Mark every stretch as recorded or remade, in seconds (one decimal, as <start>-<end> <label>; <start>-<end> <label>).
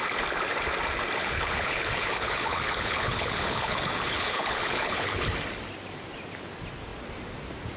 0.0-1.2 recorded; 1.2-5.3 remade; 5.3-7.8 recorded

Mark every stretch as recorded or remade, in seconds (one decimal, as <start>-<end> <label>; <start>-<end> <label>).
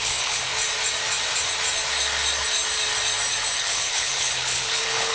0.0-0.5 remade; 0.5-3.6 recorded; 3.6-5.1 remade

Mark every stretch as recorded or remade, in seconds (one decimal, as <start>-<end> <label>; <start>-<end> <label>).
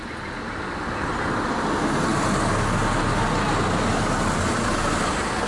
0.0-5.5 recorded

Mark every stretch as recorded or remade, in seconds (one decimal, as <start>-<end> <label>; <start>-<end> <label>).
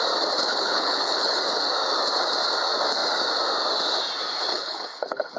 0.0-0.5 recorded; 0.5-1.4 remade; 1.4-4.5 recorded; 4.5-5.4 remade